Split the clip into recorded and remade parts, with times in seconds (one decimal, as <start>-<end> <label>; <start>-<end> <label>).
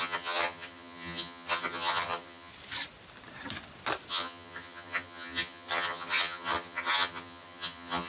0.0-2.5 remade; 2.5-4.1 recorded; 4.1-8.1 remade